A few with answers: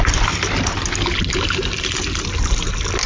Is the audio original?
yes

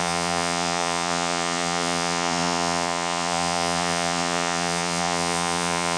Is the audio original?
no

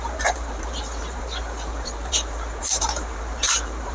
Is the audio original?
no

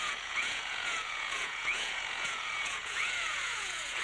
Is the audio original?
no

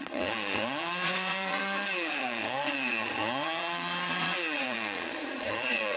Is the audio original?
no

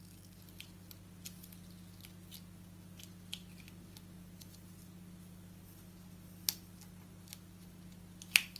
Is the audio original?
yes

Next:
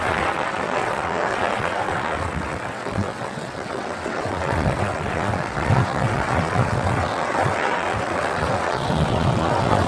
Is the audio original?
no